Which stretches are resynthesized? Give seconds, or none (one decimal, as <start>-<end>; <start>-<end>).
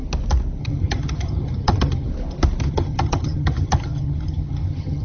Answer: 0.6-2.1; 2.6-5.0